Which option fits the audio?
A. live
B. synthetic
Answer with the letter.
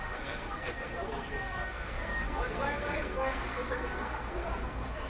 B